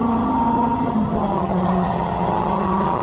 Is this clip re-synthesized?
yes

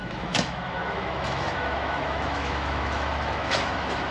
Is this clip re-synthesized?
yes